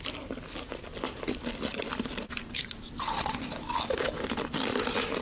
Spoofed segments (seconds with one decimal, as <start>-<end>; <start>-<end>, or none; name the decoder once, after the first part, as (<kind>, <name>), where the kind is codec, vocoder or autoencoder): 1.7-3.5 (vocoder, BigVGAN v2)